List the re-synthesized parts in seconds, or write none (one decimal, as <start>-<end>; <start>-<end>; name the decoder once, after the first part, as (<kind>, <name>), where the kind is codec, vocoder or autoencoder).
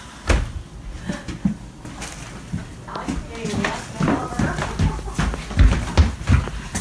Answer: none